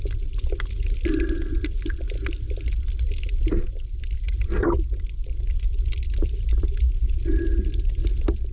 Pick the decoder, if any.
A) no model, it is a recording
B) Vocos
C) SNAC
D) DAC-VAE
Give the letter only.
A